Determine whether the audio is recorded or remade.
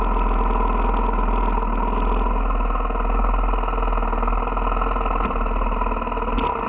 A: recorded